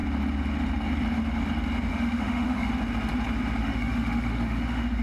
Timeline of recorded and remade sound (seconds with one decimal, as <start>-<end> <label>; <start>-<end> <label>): 0.0-1.9 recorded; 1.9-2.7 remade; 2.7-3.6 recorded; 3.6-5.0 remade